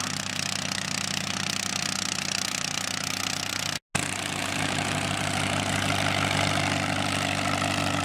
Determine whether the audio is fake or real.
real